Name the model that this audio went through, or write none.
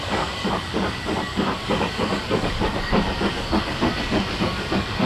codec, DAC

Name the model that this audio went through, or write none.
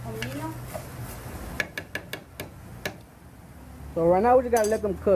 none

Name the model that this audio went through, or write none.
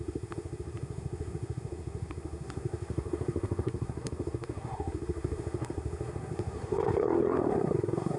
codec, SNAC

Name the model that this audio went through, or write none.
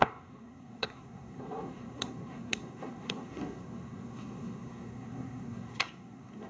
codec, SNAC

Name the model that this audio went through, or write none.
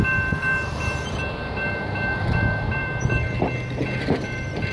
vocoder, BigVGAN v2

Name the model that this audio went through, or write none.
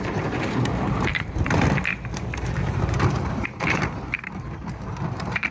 vocoder, BigVGAN v2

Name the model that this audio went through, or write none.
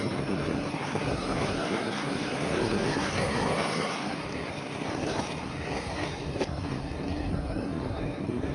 codec, SNAC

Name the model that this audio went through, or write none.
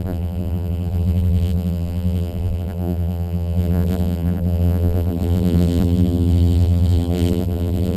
vocoder, BigVGAN v2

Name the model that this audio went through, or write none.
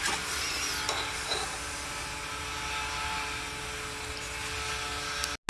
none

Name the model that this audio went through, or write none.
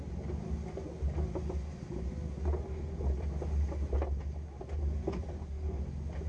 none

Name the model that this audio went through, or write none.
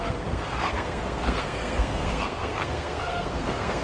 codec, SNAC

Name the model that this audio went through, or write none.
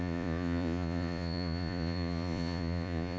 vocoder, Vocos